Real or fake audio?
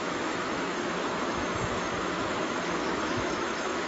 fake